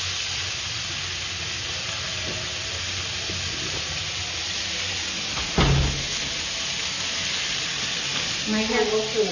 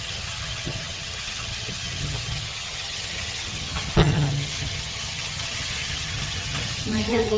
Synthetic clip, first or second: second